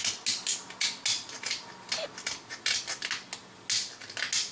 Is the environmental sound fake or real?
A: real